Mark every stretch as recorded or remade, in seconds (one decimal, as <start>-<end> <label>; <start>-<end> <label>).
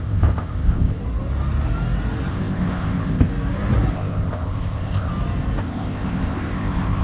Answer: 0.0-1.0 remade; 1.0-2.3 recorded; 2.3-3.3 remade; 3.3-3.9 recorded; 3.9-5.1 remade; 5.1-5.6 recorded; 5.6-7.0 remade